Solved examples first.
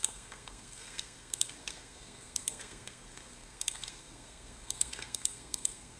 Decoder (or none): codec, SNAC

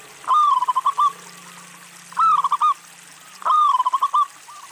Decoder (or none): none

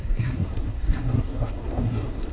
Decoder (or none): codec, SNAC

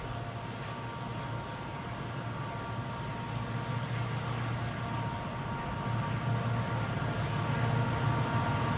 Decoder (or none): none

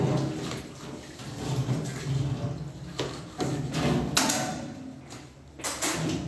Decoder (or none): none